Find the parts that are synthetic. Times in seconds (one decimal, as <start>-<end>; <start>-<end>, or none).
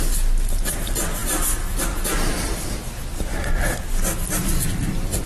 none